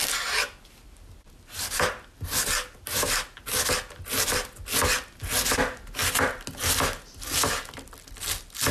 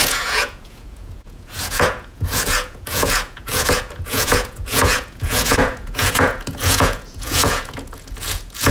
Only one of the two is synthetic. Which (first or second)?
second